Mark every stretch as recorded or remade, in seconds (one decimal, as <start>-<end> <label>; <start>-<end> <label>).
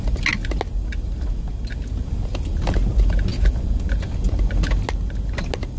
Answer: 0.0-5.8 recorded